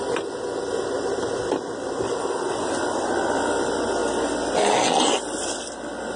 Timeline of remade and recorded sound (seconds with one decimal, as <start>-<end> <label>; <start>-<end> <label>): 0.0-6.2 recorded